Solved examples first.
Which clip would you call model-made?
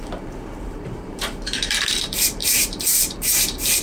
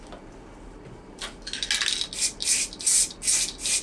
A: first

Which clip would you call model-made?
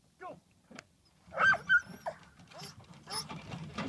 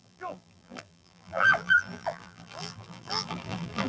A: second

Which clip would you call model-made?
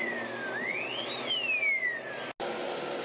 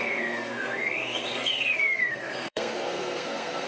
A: second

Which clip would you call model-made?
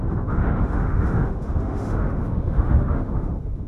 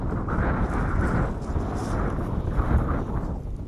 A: first